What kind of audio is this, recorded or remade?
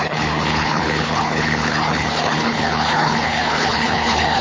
remade